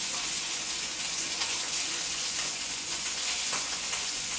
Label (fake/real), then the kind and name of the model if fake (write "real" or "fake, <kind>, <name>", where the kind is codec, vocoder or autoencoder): fake, vocoder, Vocos